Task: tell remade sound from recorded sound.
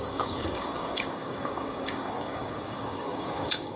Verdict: remade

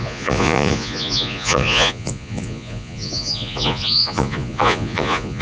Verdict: remade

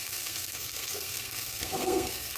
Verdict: remade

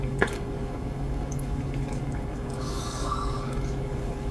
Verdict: remade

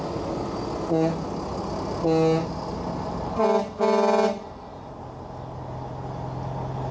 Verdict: recorded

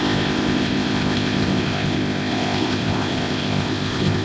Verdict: remade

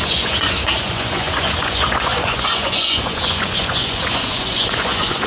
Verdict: remade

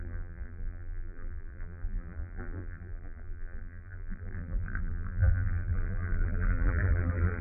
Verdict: remade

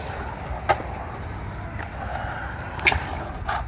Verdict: recorded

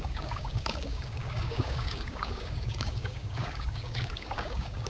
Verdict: remade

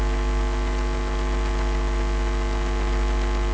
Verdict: recorded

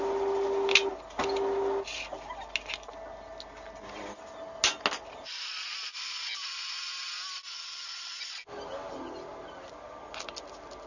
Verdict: recorded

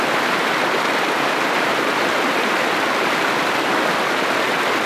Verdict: recorded